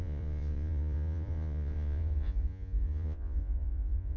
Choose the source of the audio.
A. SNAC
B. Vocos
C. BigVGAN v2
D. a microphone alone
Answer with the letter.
B